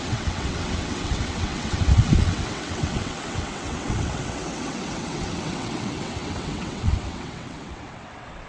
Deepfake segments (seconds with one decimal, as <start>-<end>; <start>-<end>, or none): 0.0-8.5